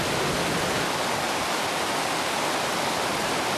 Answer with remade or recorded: recorded